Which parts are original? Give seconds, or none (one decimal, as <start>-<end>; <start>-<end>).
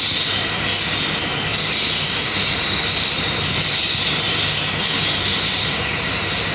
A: 0.0-6.5